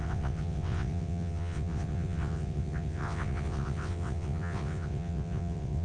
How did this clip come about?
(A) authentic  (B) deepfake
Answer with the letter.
B